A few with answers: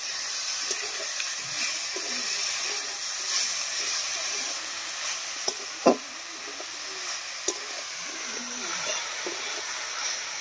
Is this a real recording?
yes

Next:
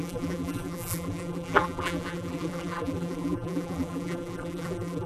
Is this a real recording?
no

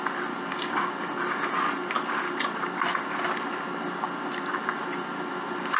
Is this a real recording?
yes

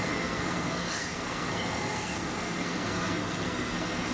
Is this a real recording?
no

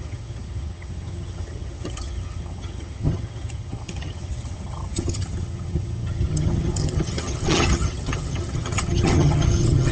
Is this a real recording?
no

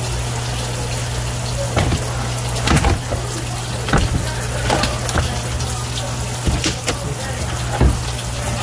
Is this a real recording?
yes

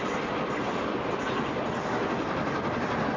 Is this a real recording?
yes